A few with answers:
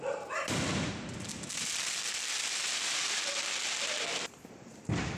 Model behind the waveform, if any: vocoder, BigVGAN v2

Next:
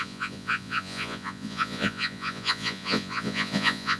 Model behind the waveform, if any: vocoder, Vocos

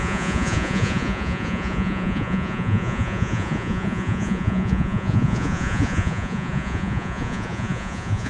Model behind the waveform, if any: vocoder, Vocos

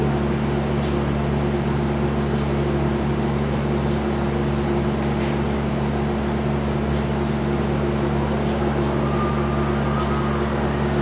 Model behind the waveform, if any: none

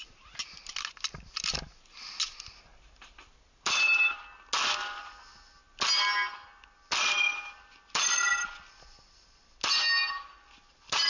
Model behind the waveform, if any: none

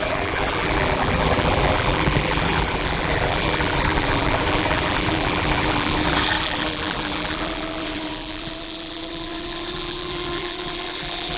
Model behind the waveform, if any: vocoder, BigVGAN v2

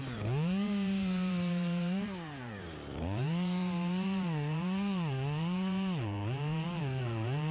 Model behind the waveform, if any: vocoder, BigVGAN v2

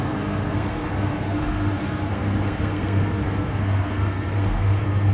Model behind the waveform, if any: codec, SNAC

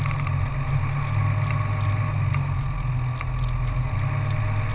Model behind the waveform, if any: none